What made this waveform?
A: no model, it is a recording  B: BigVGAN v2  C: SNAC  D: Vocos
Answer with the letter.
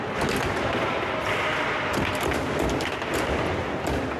A